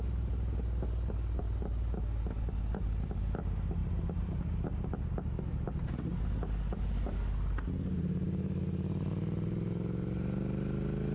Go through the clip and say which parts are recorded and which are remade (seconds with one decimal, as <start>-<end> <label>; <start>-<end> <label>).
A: 0.0-3.8 recorded; 3.8-4.3 remade; 4.3-11.1 recorded